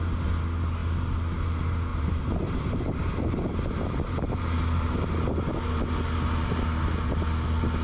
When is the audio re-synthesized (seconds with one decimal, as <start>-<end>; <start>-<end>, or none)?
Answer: 1.9-5.3